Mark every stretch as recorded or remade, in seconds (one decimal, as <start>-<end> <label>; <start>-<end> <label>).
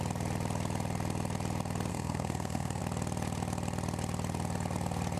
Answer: 0.0-1.9 recorded; 1.9-2.8 remade; 2.8-5.2 recorded